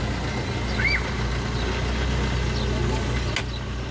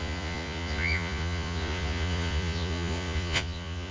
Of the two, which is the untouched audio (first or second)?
first